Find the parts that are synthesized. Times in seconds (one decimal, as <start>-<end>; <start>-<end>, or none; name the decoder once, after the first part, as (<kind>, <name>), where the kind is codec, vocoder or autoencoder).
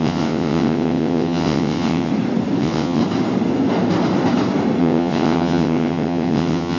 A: 0.0-2.1 (vocoder, WaveNeXt); 2.6-3.0; 4.8-6.8